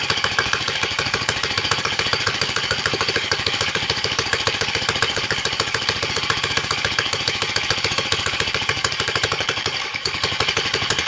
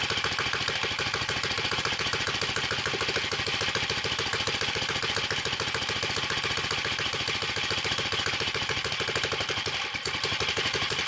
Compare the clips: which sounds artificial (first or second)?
first